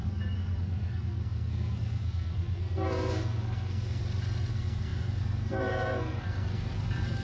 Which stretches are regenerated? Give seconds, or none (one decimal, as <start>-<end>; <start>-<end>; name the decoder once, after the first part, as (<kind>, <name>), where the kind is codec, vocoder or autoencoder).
0.0-4.0 (codec, SNAC); 4.5-7.2